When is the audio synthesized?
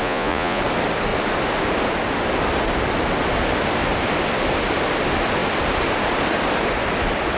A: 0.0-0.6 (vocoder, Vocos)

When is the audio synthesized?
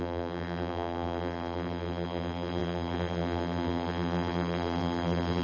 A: 0.0-5.4 (vocoder, BigVGAN v2)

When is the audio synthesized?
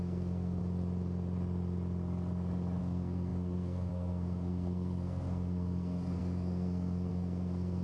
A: 0.0-0.6 (codec, SNAC); 2.8-7.8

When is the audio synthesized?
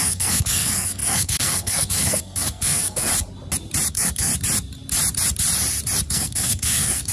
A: 0.0-3.1 (codec, SNAC); 3.9-4.3; 6.1-7.1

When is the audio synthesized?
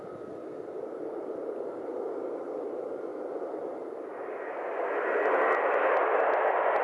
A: none